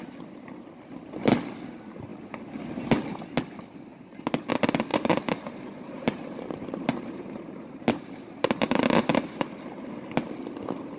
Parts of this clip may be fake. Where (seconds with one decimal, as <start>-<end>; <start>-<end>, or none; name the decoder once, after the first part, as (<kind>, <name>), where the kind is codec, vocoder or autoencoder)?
3.9-4.5 (vocoder, BigVGAN v2); 4.9-9.3